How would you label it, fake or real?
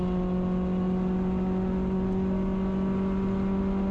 real